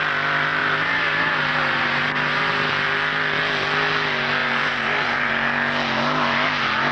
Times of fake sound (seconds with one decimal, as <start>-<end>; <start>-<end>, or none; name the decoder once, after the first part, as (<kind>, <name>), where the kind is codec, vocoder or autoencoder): 0.6-2.7 (vocoder, BigVGAN v2); 4.4-5.3